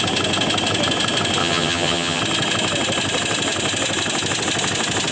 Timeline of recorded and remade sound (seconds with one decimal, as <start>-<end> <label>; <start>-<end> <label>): 0.0-1.4 recorded; 1.4-2.2 remade; 2.2-5.1 recorded